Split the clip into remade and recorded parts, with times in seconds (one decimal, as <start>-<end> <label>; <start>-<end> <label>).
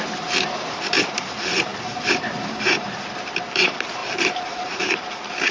0.0-5.5 remade